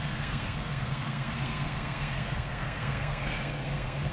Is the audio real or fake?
fake